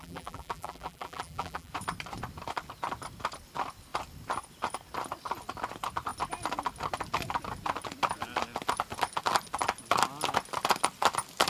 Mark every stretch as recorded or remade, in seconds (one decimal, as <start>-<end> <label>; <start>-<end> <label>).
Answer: 0.0-1.7 remade; 1.7-11.5 recorded